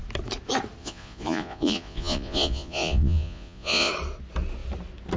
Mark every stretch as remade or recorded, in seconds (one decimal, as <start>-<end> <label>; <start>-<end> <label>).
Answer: 0.0-0.8 recorded; 0.8-3.9 remade; 3.9-5.2 recorded